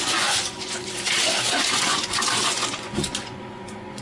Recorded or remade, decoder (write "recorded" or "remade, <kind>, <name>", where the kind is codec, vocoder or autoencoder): remade, vocoder, Vocos